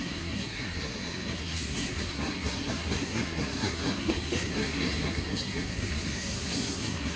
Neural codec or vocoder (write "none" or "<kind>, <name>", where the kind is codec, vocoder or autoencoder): codec, SNAC